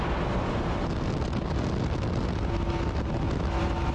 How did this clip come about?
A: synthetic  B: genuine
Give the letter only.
B